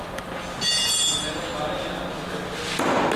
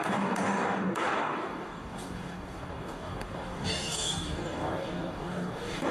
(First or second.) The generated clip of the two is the second